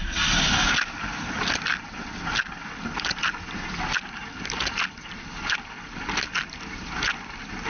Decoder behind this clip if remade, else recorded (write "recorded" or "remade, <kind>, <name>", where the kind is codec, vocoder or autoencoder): recorded